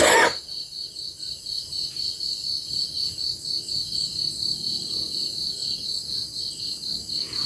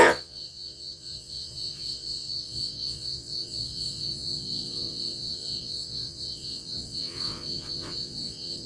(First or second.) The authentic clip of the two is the first